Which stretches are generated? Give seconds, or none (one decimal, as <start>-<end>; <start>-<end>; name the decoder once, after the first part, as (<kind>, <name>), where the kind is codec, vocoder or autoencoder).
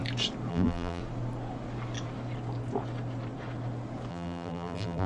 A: 0.5-1.0 (vocoder, BigVGAN v2); 4.1-5.1